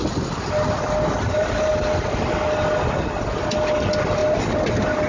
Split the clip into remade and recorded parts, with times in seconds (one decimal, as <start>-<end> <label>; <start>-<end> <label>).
0.0-5.1 recorded